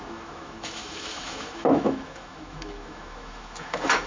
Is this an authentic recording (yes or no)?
no